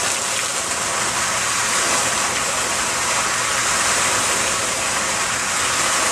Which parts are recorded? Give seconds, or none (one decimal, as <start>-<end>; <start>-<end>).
0.0-6.1